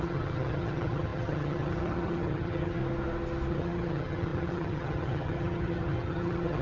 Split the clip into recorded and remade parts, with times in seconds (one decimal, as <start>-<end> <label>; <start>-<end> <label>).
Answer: 0.0-2.8 remade; 2.8-3.5 recorded; 3.5-6.6 remade